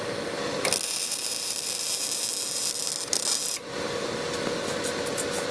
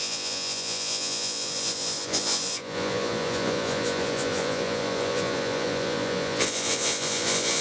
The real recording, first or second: first